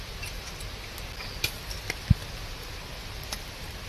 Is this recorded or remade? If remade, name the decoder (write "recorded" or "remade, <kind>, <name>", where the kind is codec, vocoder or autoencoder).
recorded